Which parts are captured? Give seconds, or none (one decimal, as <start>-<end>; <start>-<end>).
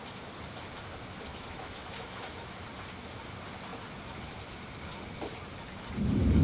0.0-1.3; 2.5-6.4